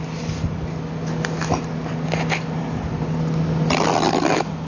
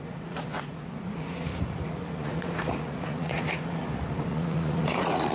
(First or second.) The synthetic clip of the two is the second